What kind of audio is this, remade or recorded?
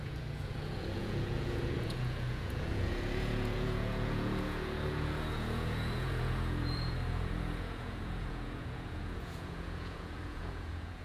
remade